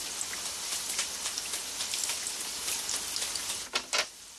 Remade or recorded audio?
recorded